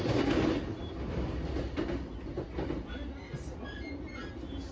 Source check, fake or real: real